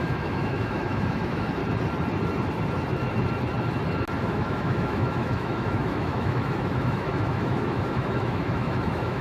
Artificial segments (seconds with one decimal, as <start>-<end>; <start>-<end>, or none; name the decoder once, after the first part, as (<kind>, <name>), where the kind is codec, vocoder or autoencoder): 0.0-1.6 (autoencoder, DAC-VAE); 4.2-9.2